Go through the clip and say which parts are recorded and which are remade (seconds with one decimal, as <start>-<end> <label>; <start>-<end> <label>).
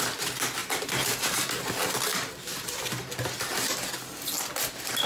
0.0-0.6 recorded; 0.6-1.4 remade; 1.4-2.5 recorded; 2.5-3.1 remade; 3.1-5.1 recorded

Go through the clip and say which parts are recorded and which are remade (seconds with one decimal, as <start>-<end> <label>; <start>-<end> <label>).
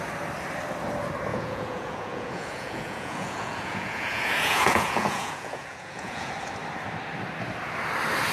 0.0-1.3 recorded; 1.3-6.3 remade; 6.3-8.3 recorded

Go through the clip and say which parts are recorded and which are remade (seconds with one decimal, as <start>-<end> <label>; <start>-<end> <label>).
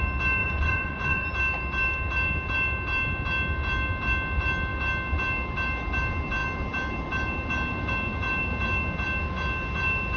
0.0-0.4 recorded; 0.4-1.3 remade; 1.3-10.2 recorded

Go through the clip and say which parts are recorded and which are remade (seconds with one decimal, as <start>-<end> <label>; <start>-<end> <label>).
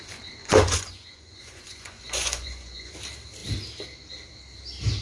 0.0-0.4 recorded; 0.4-2.9 remade; 2.9-5.0 recorded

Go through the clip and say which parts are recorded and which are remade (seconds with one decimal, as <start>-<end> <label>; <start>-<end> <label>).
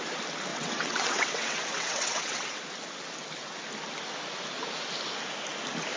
0.0-0.5 recorded; 0.5-2.6 remade; 2.6-6.0 recorded